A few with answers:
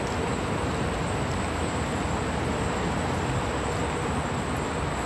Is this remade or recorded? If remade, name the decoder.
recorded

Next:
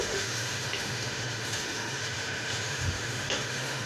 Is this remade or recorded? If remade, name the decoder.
remade, autoencoder, DAC-VAE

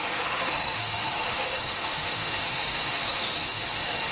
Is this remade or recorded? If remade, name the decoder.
remade, autoencoder, DAC-VAE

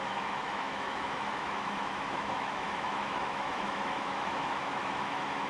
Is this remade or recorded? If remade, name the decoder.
remade, autoencoder, DAC-VAE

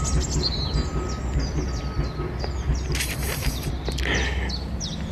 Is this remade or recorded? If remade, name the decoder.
recorded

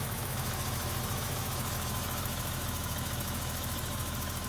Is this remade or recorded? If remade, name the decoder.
remade, autoencoder, DAC-VAE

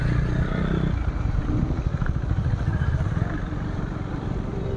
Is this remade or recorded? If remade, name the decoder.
recorded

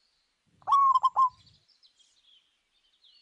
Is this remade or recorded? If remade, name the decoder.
recorded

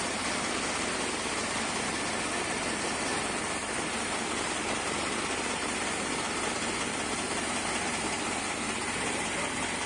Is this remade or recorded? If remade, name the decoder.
recorded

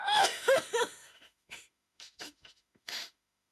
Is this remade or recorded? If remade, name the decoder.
remade, autoencoder, DAC-VAE